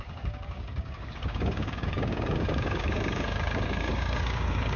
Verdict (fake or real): fake